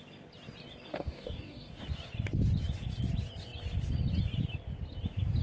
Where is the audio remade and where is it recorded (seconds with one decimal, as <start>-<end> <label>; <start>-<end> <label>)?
0.0-0.9 recorded; 0.9-1.8 remade; 1.8-5.4 recorded